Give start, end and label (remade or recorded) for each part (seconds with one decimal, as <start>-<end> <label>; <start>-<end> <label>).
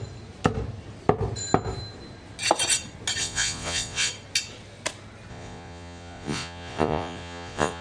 0.0-3.2 recorded; 3.2-4.1 remade; 4.1-5.3 recorded; 5.3-7.8 remade